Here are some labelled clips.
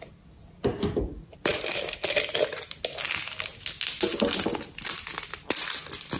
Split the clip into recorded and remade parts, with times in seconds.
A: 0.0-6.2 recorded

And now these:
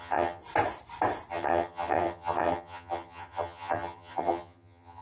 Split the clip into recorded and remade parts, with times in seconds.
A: 0.0-0.4 remade; 0.4-1.3 recorded; 1.3-5.0 remade

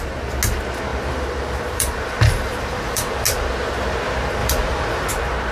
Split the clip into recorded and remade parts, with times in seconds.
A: 0.0-0.9 recorded; 0.9-3.1 remade; 3.1-4.4 recorded; 4.4-5.1 remade; 5.1-5.5 recorded

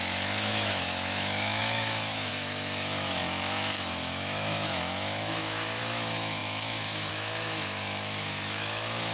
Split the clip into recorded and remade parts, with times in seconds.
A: 0.0-9.1 remade